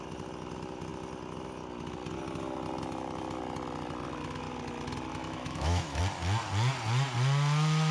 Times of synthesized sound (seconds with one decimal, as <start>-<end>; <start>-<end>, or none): 5.1-6.0